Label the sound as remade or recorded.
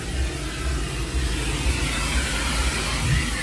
recorded